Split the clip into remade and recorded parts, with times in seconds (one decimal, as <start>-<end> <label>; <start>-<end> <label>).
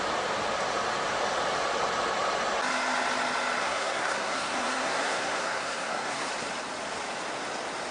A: 0.0-3.6 recorded; 3.6-6.3 remade; 6.3-7.9 recorded